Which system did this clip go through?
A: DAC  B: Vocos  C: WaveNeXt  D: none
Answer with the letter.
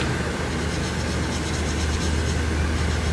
D